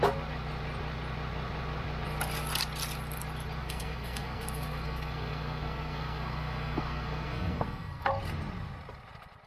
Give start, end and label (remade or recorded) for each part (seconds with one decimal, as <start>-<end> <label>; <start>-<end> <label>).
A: 0.0-3.6 recorded; 3.6-8.1 remade; 8.1-9.5 recorded